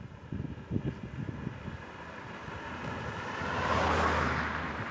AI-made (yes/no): no